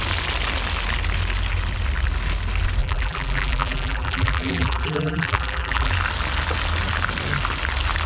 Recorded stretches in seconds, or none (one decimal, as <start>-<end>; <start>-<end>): 0.0-2.8; 5.9-8.1